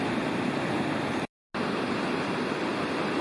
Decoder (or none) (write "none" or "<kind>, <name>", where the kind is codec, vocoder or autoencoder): none